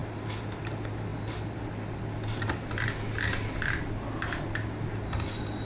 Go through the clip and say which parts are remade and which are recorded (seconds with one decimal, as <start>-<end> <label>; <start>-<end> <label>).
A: 0.0-5.6 recorded